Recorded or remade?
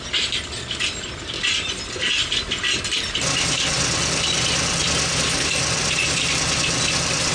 recorded